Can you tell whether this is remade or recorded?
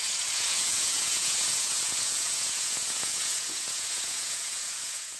remade